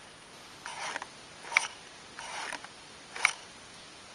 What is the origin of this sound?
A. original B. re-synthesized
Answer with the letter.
A